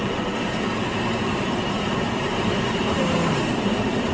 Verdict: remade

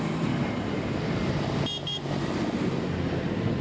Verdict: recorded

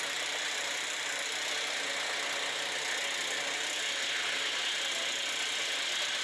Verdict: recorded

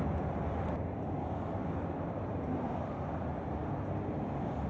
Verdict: recorded